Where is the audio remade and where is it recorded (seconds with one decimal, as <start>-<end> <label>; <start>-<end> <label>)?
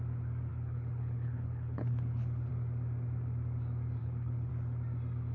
0.0-0.5 recorded; 0.5-2.5 remade; 2.5-4.0 recorded; 4.0-4.5 remade; 4.5-5.3 recorded